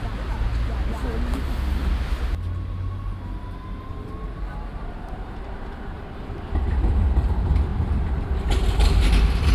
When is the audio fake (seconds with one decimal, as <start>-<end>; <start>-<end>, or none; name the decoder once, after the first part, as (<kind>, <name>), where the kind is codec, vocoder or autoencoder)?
3.9-7.3 (vocoder, BigVGAN v2); 7.7-8.3